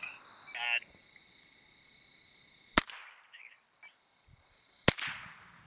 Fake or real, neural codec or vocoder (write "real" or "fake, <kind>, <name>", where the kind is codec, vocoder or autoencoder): real